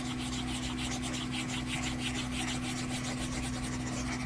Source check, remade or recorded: recorded